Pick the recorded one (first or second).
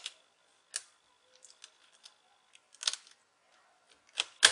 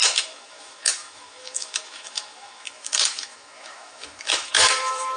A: first